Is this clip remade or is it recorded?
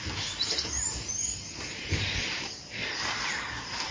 remade